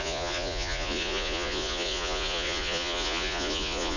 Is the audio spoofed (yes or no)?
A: yes